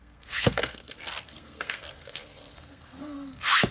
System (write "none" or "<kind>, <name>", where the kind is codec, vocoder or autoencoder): codec, SNAC